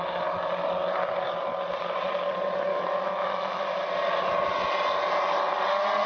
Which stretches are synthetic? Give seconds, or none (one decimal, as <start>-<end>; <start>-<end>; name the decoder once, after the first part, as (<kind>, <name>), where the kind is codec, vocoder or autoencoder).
2.7-3.6 (autoencoder, DAC-VAE)